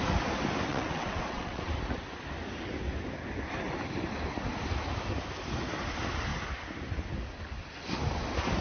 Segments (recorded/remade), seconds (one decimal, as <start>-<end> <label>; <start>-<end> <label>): 0.0-0.7 recorded; 0.7-1.7 remade; 1.7-8.6 recorded